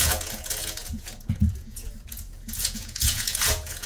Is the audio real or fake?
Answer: fake